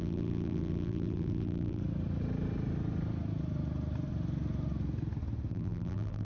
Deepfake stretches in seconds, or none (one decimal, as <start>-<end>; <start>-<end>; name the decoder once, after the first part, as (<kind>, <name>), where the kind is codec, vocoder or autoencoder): 0.0-1.8 (vocoder, BigVGAN v2); 5.5-6.2